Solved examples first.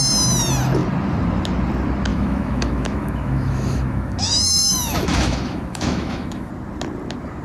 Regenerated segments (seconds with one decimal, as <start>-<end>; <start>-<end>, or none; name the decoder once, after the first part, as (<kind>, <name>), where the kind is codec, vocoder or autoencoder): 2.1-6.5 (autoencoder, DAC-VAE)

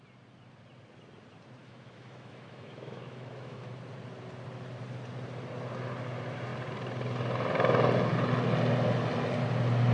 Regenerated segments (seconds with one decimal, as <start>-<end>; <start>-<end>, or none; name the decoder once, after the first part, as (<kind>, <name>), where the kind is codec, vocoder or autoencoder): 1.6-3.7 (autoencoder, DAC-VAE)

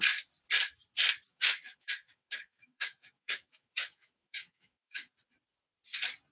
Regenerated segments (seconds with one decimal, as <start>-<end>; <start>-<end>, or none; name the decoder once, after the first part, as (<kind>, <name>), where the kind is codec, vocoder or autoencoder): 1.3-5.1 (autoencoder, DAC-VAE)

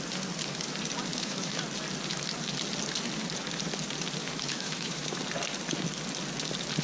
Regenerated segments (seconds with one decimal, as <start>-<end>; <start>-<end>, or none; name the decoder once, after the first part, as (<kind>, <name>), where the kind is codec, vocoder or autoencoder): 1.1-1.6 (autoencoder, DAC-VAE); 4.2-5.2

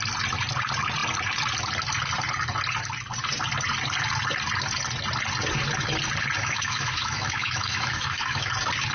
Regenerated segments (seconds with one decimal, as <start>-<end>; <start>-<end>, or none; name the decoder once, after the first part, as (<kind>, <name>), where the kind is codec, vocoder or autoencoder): 6.4-8.5 (autoencoder, DAC-VAE)

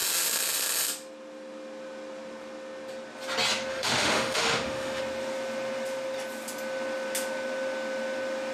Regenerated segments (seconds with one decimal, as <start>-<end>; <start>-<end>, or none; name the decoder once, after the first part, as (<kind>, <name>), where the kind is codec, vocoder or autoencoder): 3.7-5.0 (autoencoder, DAC-VAE)

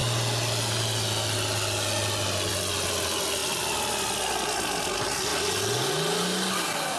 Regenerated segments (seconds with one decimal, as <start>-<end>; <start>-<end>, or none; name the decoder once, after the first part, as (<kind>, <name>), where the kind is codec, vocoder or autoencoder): none